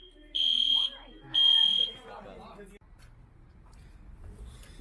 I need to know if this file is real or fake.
real